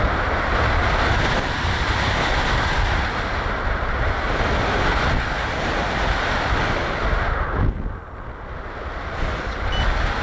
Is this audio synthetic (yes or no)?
no